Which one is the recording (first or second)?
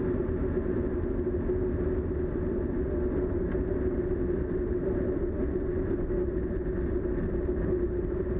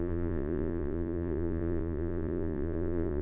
first